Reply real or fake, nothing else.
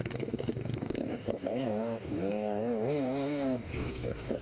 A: fake